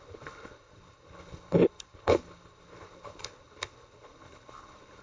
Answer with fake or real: fake